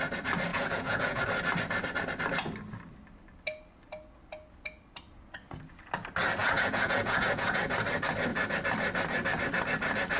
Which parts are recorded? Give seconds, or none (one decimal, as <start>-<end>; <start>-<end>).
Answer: 0.0-0.5; 1.2-6.4; 7.6-10.2

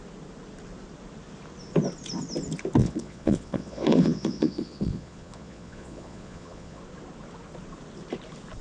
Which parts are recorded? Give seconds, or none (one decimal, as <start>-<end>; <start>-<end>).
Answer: 0.0-2.8; 6.8-8.6